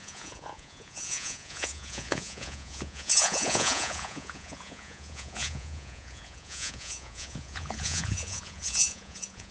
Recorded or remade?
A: remade